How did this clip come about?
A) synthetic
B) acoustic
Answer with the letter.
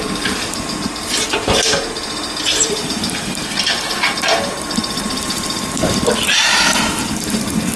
A